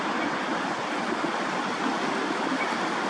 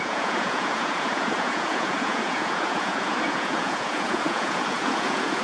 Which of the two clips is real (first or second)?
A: first